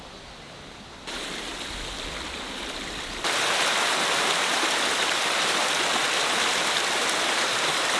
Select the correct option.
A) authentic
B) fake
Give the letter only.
A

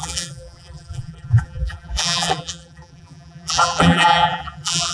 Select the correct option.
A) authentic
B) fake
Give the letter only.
B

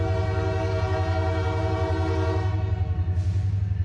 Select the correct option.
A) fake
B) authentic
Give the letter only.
B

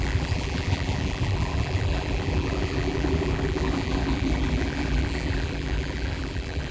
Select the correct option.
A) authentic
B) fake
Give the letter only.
B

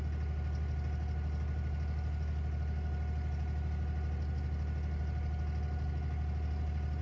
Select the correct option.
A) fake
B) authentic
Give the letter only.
B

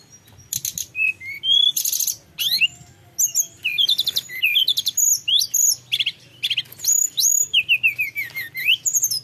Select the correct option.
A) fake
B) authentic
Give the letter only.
B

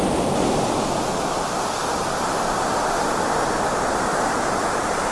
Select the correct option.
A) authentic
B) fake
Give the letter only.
A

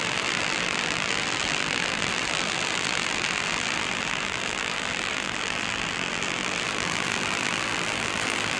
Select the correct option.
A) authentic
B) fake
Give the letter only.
B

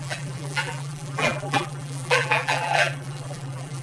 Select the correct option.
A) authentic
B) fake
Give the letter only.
B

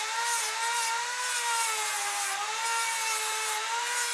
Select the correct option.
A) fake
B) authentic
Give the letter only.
A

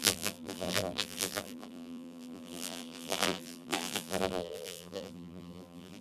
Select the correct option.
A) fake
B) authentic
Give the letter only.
A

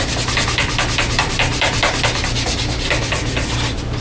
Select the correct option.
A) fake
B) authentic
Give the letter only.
B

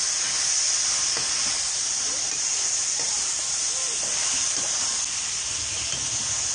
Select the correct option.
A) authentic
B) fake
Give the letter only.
A